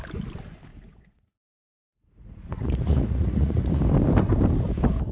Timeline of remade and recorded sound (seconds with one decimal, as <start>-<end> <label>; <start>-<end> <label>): 0.0-0.7 recorded; 0.7-3.8 remade; 3.8-5.1 recorded